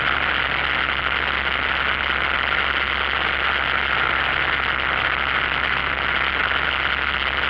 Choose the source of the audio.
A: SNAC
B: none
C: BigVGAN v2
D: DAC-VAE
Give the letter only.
B